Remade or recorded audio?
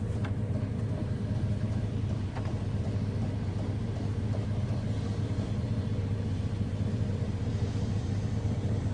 remade